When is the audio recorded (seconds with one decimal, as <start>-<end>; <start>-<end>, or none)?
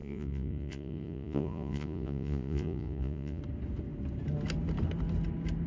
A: 3.4-5.7